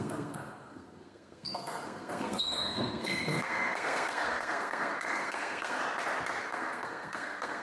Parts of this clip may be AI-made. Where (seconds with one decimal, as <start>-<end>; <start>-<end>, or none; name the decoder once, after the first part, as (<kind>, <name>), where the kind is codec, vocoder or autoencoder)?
0.0-5.8 (codec, SNAC); 6.4-7.6